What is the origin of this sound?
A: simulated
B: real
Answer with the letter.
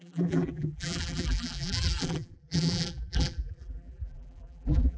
A